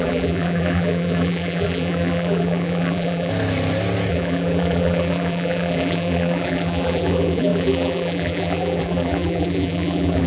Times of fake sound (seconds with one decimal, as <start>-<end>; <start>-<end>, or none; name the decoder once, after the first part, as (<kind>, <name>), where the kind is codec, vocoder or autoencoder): 0.0-3.3 (vocoder, BigVGAN v2); 4.1-10.3